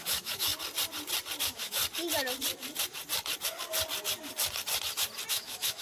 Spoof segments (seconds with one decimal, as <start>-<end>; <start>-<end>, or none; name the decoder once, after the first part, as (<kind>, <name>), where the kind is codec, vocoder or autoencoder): 0.0-0.5 (autoencoder, DAC-VAE); 1.4-1.8; 5.3-5.8